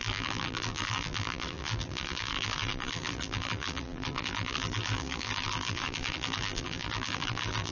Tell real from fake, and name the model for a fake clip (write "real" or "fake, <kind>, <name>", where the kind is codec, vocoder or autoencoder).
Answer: fake, vocoder, BigVGAN v2